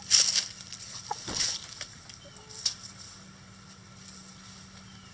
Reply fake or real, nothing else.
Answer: real